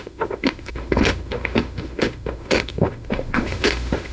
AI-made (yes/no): yes